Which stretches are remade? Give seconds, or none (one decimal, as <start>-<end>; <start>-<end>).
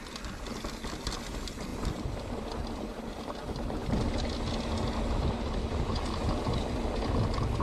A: none